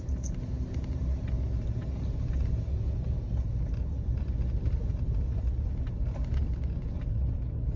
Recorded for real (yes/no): yes